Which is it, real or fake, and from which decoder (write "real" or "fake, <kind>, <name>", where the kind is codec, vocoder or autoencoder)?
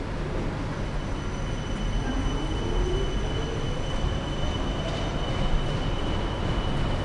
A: real